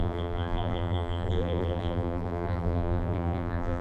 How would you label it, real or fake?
fake